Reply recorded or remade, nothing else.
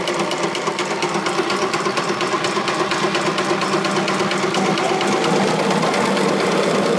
recorded